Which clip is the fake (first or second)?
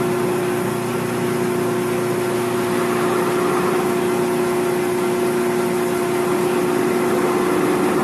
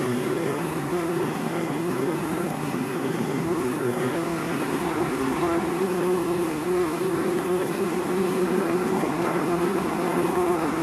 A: second